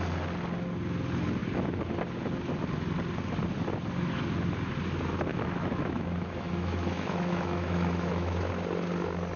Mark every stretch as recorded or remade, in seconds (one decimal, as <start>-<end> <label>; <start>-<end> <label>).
0.0-5.3 recorded; 5.3-8.5 remade; 8.5-9.4 recorded

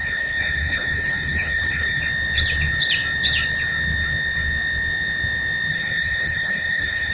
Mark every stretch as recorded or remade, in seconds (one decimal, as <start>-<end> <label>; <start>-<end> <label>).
0.0-2.0 remade; 2.0-5.7 recorded; 5.7-7.1 remade